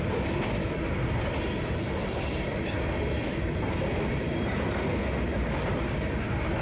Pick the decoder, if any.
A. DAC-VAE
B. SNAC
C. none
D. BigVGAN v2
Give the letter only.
C